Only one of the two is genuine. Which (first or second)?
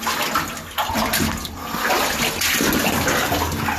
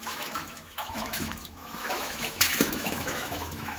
first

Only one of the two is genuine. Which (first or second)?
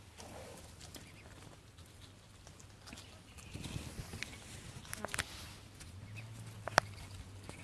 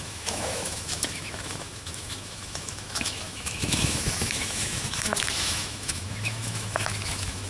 first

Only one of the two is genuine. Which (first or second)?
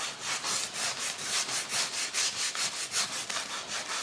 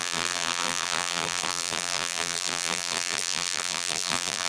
first